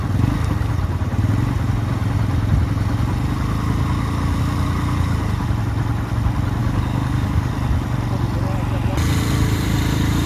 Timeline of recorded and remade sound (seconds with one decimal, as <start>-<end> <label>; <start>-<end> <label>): 0.0-6.6 recorded; 6.6-7.5 remade; 7.5-10.3 recorded